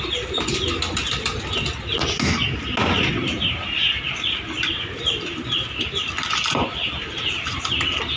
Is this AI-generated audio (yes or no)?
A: no